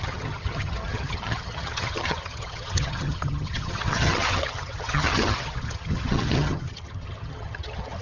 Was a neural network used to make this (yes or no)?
yes